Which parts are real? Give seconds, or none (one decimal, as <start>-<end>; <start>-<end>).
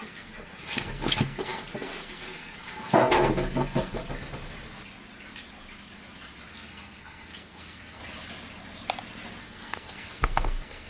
4.0-6.5; 8.0-9.4